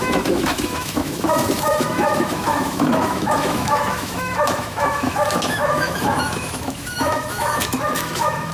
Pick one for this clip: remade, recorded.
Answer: remade